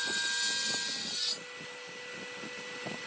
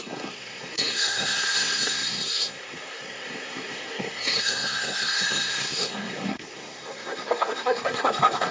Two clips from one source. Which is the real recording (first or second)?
first